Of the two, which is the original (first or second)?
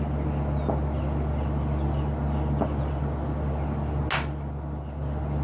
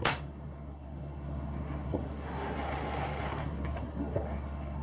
first